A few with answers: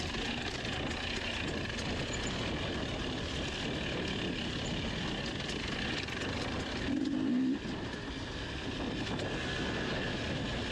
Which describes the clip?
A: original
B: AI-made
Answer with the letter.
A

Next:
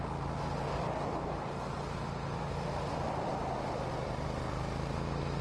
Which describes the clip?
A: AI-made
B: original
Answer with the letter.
B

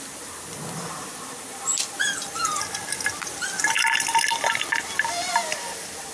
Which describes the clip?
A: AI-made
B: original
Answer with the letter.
B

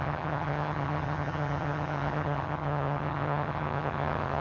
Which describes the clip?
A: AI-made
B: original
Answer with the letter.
A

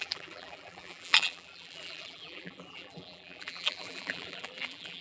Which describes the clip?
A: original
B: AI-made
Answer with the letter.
B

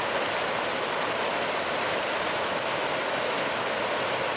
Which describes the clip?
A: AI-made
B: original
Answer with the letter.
B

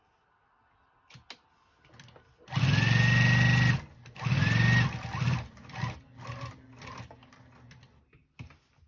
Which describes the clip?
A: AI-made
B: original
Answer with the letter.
B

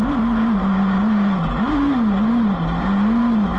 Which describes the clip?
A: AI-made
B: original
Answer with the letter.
B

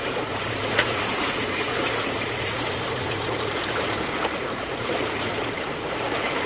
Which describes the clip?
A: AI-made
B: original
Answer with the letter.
A